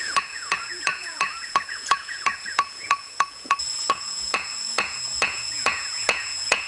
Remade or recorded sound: remade